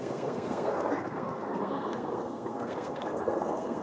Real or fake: fake